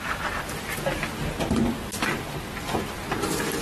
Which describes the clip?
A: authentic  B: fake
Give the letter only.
A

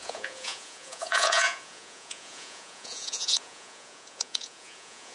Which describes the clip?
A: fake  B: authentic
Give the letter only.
A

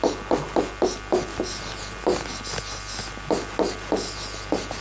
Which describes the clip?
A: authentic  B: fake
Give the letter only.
A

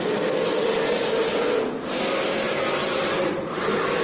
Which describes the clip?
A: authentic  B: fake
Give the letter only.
A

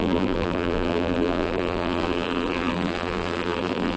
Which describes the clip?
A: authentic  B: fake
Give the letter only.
B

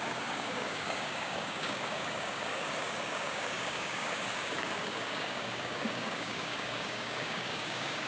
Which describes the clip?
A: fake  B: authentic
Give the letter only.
A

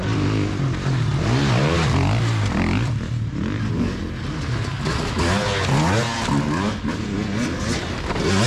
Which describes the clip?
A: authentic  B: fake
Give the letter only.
A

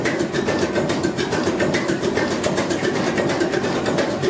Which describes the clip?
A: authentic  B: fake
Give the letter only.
A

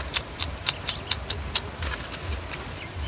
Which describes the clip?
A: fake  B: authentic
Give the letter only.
A